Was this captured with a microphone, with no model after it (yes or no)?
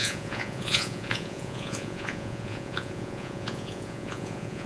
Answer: no